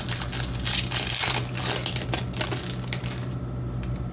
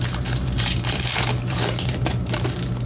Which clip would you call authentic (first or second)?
first